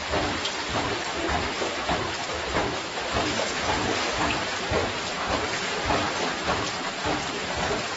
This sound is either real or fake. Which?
fake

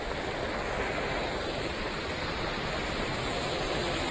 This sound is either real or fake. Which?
fake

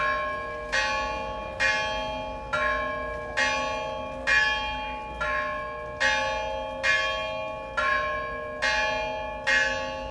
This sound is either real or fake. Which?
real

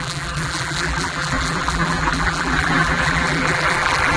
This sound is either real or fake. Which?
fake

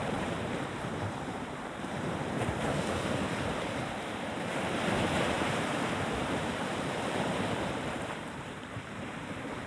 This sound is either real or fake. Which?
fake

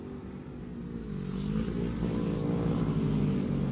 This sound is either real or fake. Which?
real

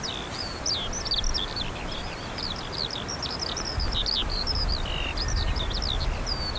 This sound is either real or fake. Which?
real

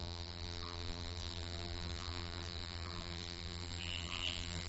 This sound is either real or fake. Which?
fake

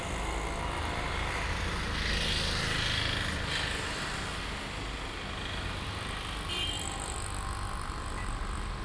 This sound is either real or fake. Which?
real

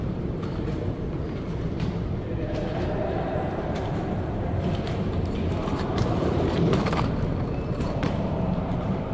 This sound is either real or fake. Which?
fake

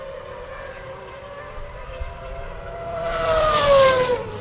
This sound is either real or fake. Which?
fake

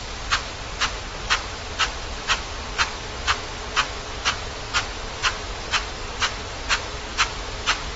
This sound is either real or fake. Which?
fake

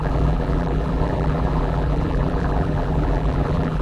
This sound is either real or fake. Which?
fake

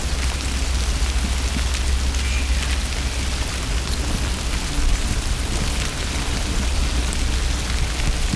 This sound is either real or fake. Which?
real